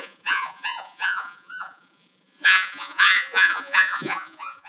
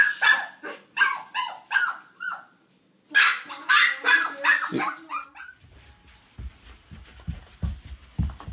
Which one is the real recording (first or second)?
second